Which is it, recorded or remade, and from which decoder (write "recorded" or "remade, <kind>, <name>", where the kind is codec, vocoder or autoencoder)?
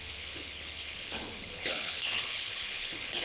remade, codec, HILCodec